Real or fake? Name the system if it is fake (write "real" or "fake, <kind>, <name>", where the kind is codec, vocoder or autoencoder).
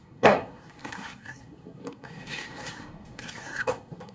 fake, codec, SNAC